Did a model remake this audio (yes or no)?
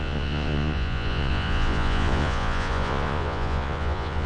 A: yes